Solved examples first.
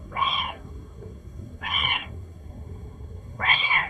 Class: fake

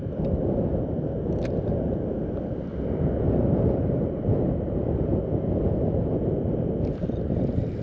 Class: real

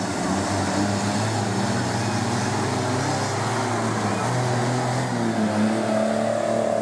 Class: real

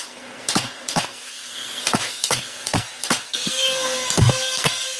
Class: fake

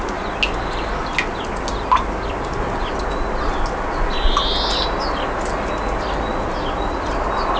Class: real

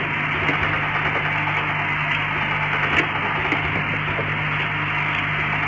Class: real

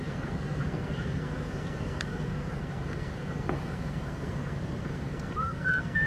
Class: fake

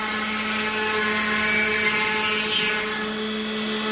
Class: real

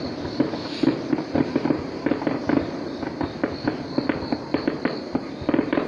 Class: real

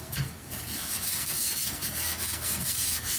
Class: fake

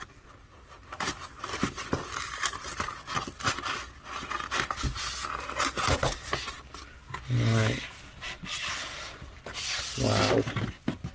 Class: real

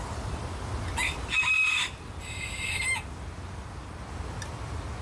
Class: real